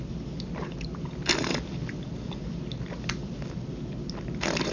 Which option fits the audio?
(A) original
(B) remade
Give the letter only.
A